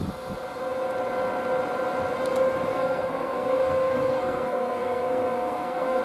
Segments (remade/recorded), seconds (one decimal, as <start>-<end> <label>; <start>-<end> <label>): 0.0-2.7 recorded; 2.7-6.0 remade